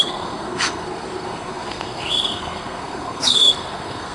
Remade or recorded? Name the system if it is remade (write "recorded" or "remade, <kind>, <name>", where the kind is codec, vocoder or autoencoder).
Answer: remade, codec, SNAC